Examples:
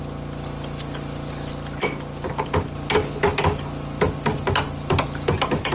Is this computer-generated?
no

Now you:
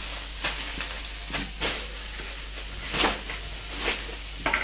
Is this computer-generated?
no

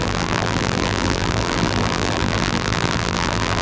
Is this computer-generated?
yes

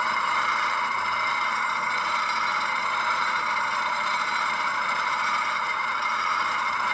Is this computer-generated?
yes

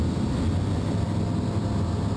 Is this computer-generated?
no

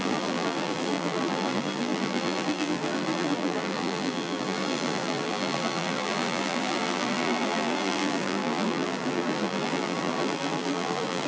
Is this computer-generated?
yes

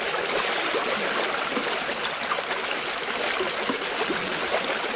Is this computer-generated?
no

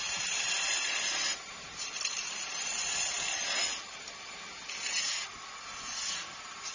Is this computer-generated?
no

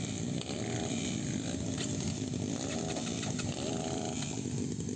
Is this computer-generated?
yes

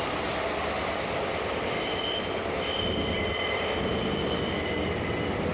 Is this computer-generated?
yes